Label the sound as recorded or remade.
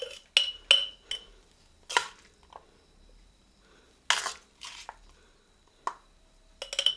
recorded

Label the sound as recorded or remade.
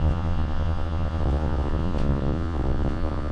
remade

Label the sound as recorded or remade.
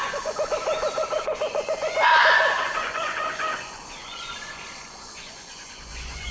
remade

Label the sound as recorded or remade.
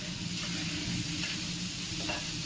recorded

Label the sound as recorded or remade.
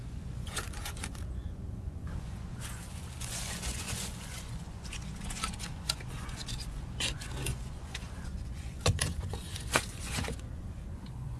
remade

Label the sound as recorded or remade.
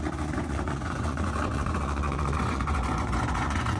remade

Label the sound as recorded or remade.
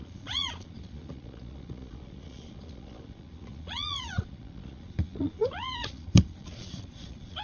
remade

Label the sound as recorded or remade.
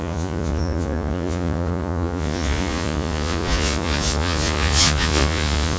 remade